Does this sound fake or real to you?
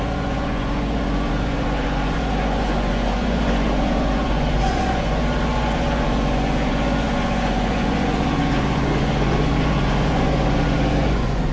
fake